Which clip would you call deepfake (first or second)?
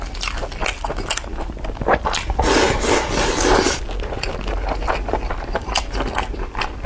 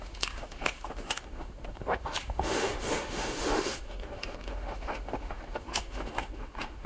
second